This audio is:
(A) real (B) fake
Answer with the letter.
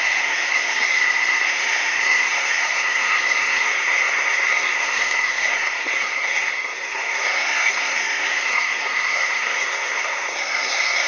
B